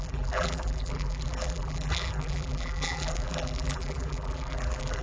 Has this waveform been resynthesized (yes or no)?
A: yes